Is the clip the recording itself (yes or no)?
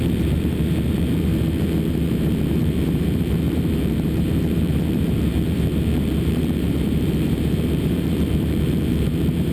no